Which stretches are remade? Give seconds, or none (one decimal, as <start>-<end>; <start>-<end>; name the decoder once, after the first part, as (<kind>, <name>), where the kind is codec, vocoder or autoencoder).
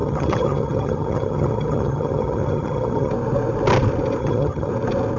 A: 0.0-3.1 (vocoder, HiFi-GAN); 4.2-4.7